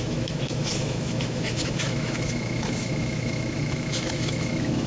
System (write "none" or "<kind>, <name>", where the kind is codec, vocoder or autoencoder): autoencoder, DAC-VAE